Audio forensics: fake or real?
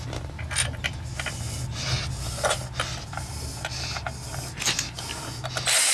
real